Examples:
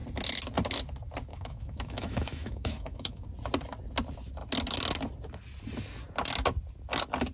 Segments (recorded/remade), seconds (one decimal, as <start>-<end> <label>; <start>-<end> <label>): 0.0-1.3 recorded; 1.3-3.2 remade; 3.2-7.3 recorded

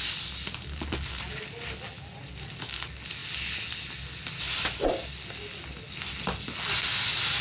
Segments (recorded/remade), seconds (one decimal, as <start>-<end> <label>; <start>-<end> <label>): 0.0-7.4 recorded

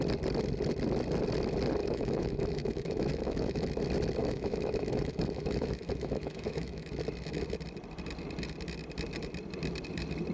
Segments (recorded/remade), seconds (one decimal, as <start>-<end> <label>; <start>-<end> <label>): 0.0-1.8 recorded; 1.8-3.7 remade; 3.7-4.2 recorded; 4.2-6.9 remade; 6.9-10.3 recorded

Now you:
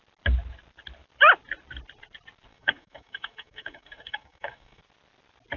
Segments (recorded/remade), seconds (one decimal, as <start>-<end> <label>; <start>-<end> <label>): 0.0-2.5 recorded; 2.5-4.8 remade; 4.8-5.6 recorded

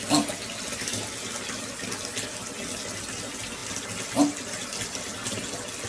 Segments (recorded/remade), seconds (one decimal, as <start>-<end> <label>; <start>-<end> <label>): 0.0-5.9 recorded

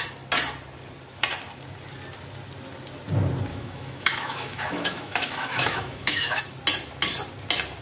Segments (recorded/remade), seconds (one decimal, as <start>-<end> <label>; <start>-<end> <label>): 0.0-3.5 recorded; 3.5-6.4 remade; 6.4-7.8 recorded